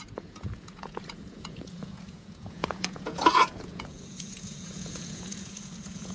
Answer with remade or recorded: remade